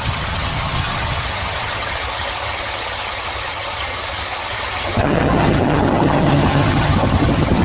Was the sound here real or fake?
fake